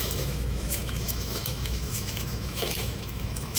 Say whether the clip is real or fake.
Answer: fake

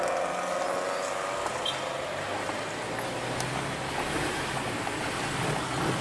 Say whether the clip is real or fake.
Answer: real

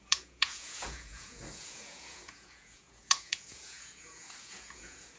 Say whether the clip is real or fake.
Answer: fake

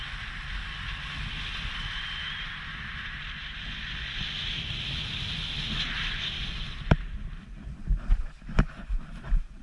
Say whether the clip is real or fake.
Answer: real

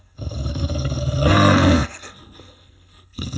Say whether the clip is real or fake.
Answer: fake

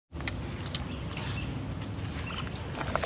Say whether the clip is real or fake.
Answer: real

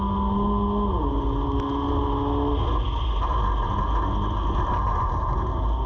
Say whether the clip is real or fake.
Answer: real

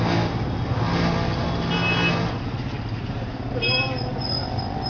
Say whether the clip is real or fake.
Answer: real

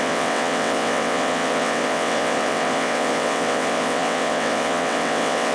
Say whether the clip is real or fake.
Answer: fake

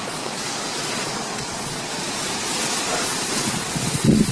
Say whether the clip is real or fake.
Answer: fake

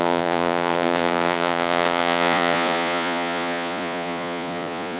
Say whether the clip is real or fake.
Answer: fake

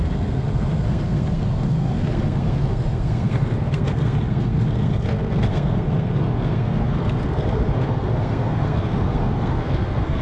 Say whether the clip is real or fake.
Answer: fake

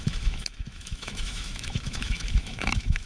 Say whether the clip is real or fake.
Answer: fake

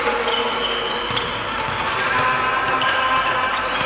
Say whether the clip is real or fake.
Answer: real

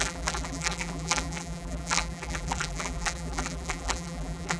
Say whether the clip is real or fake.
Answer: fake